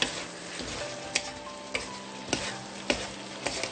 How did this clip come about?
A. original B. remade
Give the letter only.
A